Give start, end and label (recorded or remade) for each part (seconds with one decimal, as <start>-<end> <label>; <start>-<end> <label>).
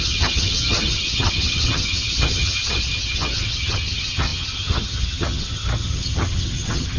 0.0-7.0 remade